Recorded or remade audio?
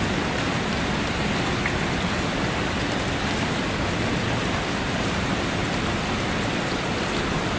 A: recorded